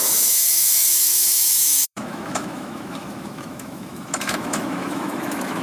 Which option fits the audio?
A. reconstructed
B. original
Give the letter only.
A